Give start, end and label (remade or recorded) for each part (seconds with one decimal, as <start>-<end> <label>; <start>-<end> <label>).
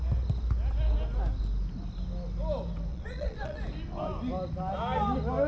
0.0-2.9 recorded; 2.9-3.6 remade; 3.6-5.5 recorded